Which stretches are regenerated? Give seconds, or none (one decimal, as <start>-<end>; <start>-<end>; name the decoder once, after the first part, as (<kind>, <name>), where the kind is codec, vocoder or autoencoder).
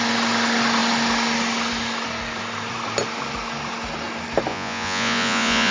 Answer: 4.5-5.7 (vocoder, Vocos)